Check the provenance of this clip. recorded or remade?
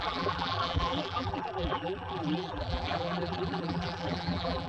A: remade